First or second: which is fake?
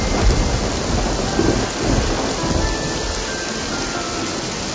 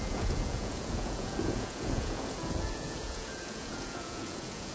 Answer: second